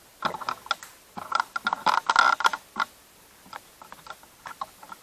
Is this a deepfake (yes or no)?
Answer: no